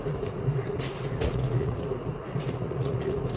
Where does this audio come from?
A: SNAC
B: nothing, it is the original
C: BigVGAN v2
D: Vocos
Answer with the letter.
D